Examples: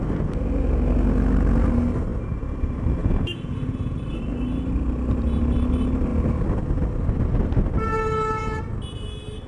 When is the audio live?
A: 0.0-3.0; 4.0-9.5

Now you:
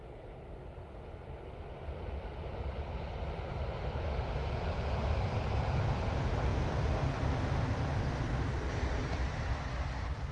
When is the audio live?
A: 0.0-10.3

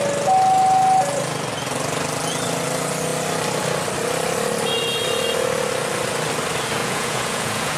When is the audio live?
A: 0.0-6.8

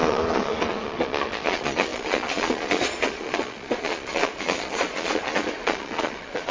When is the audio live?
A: none

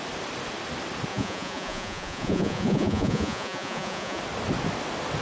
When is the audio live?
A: 0.0-1.1; 4.2-5.2

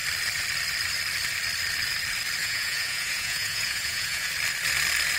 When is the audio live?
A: 0.0-2.4; 4.3-5.2

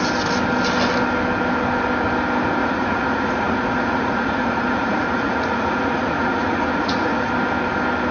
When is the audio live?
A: 0.0-2.6; 7.3-8.1